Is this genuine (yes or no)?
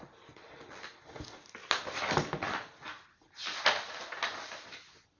yes